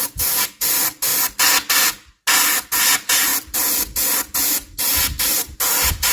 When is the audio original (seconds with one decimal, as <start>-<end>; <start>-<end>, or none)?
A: 1.1-2.8; 3.3-5.3